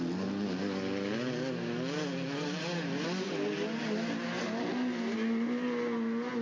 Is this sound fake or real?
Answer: real